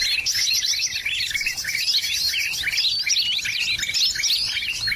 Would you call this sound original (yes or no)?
yes